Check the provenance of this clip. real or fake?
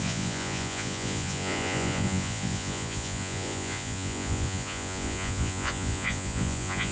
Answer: fake